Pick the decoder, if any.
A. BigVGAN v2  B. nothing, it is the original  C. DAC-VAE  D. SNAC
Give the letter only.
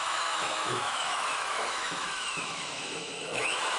C